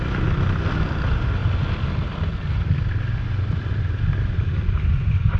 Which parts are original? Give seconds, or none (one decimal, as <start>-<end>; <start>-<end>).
0.0-5.4